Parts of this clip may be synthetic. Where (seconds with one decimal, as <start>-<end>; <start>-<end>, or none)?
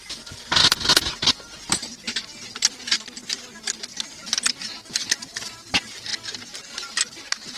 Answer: 0.0-0.6; 5.2-6.1